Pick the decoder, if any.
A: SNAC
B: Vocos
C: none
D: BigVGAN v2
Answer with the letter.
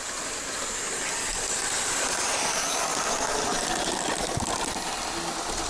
C